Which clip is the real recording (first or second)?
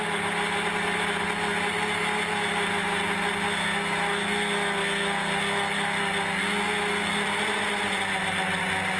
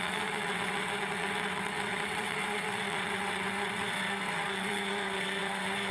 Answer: first